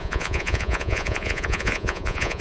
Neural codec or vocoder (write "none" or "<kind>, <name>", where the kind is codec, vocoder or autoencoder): vocoder, Vocos